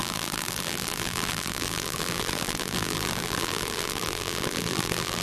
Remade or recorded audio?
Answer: remade